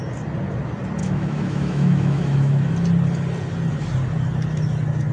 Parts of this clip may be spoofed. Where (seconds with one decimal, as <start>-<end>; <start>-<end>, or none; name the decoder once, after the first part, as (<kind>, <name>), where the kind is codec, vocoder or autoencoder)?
1.0-2.7 (autoencoder, DAC-VAE)